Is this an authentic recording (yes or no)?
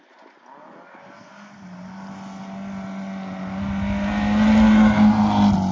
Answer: yes